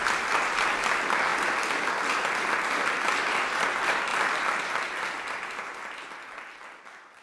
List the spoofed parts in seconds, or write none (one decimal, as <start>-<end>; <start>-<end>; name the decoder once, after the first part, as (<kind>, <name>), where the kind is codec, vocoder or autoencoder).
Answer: none